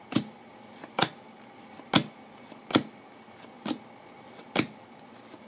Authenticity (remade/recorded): recorded